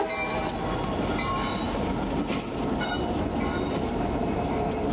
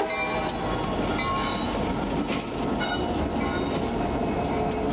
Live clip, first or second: second